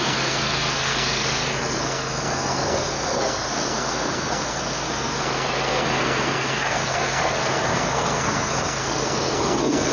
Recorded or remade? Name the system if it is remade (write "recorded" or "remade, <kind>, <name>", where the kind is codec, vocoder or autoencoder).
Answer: remade, codec, SNAC